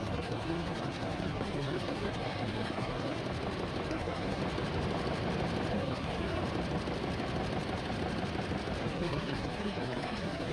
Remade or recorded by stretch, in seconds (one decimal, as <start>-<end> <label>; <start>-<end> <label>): 0.0-3.2 remade; 3.2-3.9 recorded; 3.9-4.4 remade; 4.4-5.7 recorded; 5.7-6.4 remade; 6.4-8.8 recorded; 8.8-10.5 remade